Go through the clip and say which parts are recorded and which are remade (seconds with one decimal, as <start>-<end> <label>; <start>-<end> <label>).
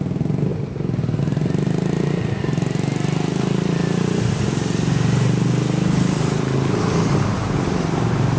0.0-8.4 recorded